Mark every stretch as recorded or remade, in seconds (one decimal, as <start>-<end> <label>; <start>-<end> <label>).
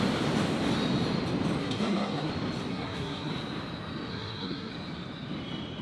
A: 0.0-1.6 recorded; 1.6-2.3 remade; 2.3-2.7 recorded; 2.7-3.3 remade; 3.3-4.1 recorded; 4.1-4.7 remade; 4.7-5.8 recorded